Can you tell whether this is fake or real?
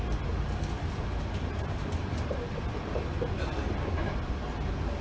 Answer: real